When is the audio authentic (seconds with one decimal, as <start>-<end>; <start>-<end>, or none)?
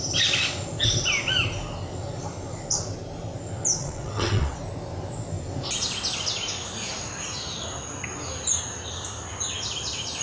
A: 0.0-3.8; 4.6-10.2